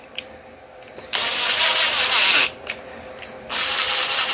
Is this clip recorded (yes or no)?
yes